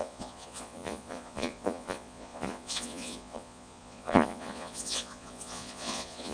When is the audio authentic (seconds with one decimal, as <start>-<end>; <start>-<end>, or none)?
none